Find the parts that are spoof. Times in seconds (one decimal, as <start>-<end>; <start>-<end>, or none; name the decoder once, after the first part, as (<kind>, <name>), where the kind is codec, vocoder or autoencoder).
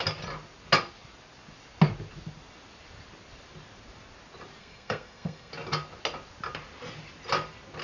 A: 4.6-5.5 (codec, SNAC)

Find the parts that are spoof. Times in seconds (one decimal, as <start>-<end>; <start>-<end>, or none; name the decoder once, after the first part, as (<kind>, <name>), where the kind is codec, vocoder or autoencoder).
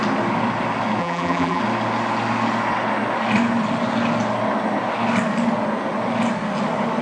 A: 1.0-1.6 (vocoder, BigVGAN v2)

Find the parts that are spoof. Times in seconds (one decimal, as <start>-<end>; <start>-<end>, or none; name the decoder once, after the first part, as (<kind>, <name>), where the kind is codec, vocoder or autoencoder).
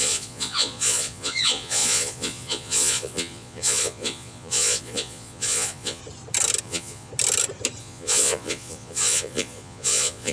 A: 0.0-6.0 (vocoder, Vocos); 6.6-7.1; 7.8-10.3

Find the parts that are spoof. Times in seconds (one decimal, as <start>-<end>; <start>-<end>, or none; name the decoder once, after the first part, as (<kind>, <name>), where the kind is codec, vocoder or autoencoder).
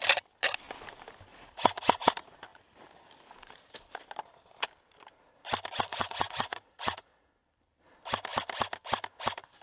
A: 1.3-2.1 (vocoder, Vocos); 5.9-7.3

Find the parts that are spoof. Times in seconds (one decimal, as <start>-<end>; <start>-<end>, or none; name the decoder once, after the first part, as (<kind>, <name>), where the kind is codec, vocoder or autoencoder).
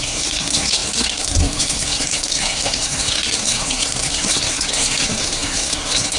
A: 0.0-6.2 (codec, SNAC)